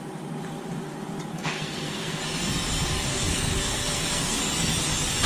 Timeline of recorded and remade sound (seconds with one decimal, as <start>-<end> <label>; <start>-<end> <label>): 0.0-1.3 recorded; 1.3-2.2 remade; 2.2-3.1 recorded; 3.1-4.4 remade; 4.4-5.3 recorded